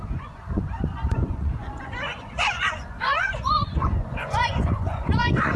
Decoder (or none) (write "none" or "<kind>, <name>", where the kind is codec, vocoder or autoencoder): vocoder, Vocos